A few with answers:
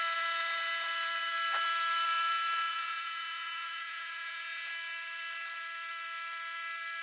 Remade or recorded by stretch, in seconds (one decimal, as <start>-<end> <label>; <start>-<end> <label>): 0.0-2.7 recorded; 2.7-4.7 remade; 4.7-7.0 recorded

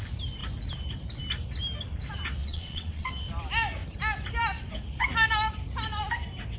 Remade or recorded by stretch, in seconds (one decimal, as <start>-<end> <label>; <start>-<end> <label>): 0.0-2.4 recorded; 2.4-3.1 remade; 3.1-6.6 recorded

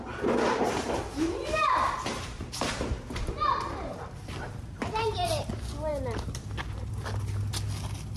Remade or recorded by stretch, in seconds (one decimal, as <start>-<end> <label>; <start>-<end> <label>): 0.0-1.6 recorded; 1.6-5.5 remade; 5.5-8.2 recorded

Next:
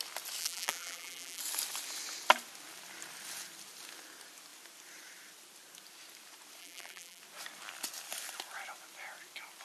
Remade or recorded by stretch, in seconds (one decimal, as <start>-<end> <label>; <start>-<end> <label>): 0.0-0.4 recorded; 0.4-1.4 remade; 1.4-6.6 recorded; 6.6-7.2 remade; 7.2-9.6 recorded

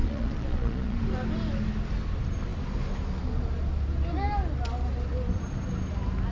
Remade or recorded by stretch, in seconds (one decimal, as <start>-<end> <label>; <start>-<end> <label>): 0.0-1.0 remade; 1.0-6.3 recorded

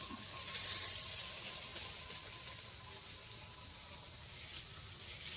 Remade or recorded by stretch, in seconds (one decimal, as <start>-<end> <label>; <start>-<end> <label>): 0.0-3.2 recorded; 3.2-4.6 remade; 4.6-5.4 recorded

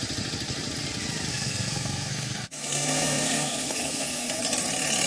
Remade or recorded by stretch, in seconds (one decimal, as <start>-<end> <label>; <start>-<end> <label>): 0.0-1.3 recorded; 1.3-4.4 remade; 4.4-5.1 recorded